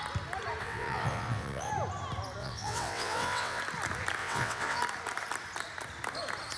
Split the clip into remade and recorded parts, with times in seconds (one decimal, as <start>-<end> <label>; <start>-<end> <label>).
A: 0.0-0.6 recorded; 0.6-1.7 remade; 1.7-2.4 recorded; 2.4-3.6 remade; 3.6-4.2 recorded; 4.2-4.8 remade; 4.8-6.6 recorded